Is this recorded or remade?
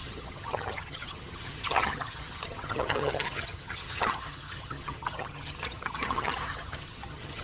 remade